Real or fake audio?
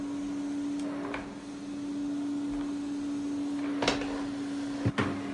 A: real